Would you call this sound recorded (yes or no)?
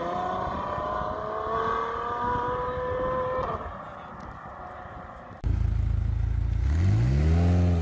yes